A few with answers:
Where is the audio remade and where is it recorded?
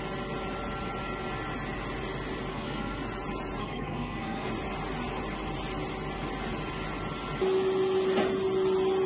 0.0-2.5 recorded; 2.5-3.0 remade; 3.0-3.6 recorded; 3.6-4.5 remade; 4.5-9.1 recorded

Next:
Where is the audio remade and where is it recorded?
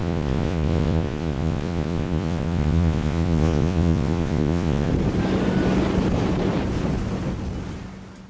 0.0-4.9 remade; 4.9-8.3 recorded